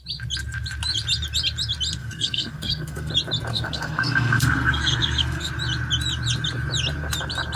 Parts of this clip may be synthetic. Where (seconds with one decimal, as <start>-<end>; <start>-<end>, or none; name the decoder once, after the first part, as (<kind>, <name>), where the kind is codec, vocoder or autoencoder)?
2.0-3.1 (codec, SNAC); 3.5-5.5